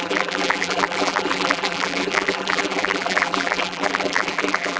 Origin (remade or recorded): remade